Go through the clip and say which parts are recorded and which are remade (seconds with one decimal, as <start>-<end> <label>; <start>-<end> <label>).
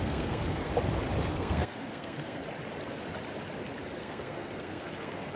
0.0-0.7 remade; 0.7-1.3 recorded; 1.3-2.4 remade; 2.4-4.0 recorded; 4.0-5.4 remade